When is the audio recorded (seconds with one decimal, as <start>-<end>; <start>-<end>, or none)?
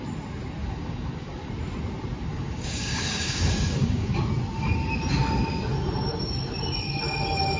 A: 0.0-0.6; 1.5-2.3; 4.1-7.6